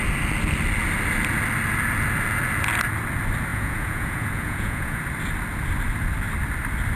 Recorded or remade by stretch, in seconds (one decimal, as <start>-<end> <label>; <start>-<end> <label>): 0.0-3.5 recorded; 3.5-5.0 remade; 5.0-7.0 recorded